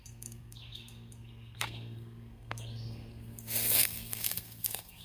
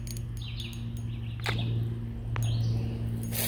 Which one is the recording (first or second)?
second